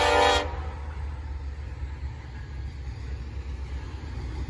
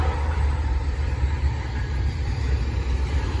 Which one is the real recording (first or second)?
first